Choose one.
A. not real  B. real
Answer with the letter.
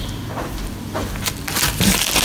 B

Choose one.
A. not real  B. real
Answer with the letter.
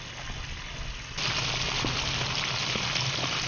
B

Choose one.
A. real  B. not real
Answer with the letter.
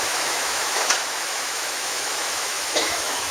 B